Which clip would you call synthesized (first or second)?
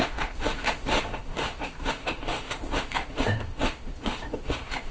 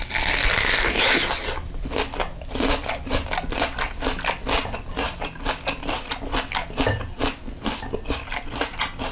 first